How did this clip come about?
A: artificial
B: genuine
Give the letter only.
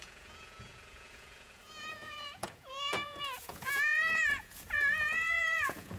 A